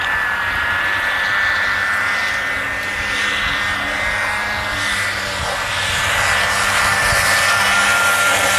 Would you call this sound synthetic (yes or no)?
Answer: no